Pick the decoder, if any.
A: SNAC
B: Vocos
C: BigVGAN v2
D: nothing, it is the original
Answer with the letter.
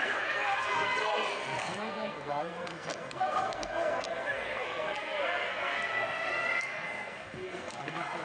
A